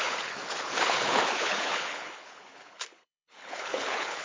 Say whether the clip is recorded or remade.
remade